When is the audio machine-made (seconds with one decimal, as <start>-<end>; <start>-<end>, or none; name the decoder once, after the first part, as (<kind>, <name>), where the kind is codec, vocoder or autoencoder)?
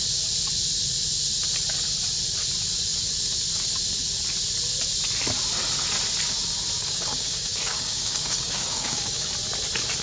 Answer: 6.8-9.3 (codec, DAC)